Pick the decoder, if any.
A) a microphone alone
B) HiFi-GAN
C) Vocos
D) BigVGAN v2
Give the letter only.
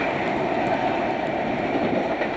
A